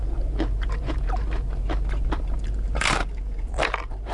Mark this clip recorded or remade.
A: remade